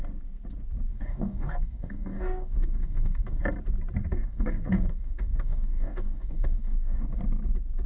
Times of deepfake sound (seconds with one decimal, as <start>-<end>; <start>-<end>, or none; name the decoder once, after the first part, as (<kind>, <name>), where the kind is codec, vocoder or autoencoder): 0.9-3.4 (codec, DAC); 4.0-7.2